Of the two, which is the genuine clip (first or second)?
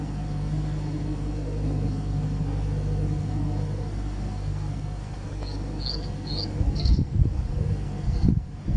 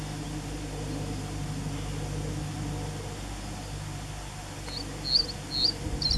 second